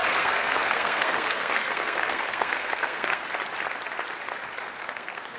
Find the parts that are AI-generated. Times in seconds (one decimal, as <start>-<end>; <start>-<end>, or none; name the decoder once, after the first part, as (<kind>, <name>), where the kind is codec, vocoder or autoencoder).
0.0-3.2 (codec, SNAC); 4.8-5.4